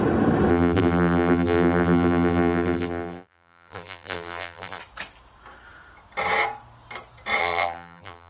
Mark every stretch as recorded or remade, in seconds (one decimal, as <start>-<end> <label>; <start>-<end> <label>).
0.0-0.5 recorded; 0.5-4.8 remade; 4.8-7.4 recorded; 7.4-8.3 remade